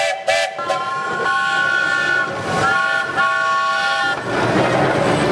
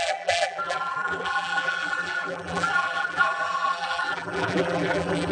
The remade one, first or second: second